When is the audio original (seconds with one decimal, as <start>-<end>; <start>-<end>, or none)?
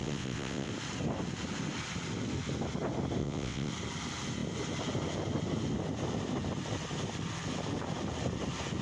0.7-3.2; 3.7-8.8